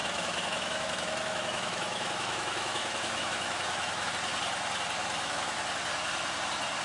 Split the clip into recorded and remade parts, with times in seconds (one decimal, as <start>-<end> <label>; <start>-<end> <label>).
0.0-4.1 remade; 4.1-5.0 recorded; 5.0-5.6 remade; 5.6-6.8 recorded